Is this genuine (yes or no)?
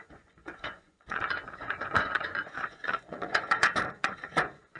no